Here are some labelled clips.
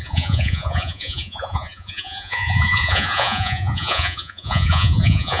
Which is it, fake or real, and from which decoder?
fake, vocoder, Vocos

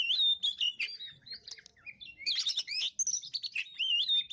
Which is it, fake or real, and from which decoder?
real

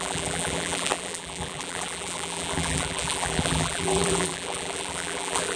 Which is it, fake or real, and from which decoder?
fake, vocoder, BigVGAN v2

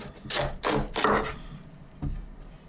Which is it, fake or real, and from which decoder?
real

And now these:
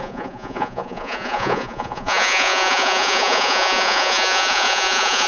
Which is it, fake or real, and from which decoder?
fake, vocoder, Vocos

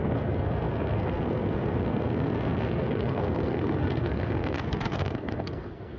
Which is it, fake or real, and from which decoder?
fake, codec, SNAC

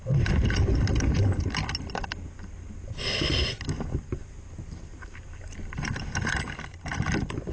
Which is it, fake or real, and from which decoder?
real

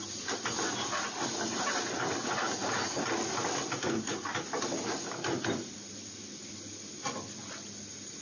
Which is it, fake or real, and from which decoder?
real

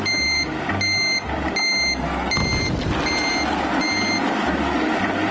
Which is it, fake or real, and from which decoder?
real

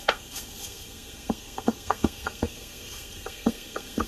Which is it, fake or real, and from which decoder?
fake, codec, SNAC